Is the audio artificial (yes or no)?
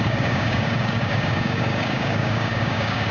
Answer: yes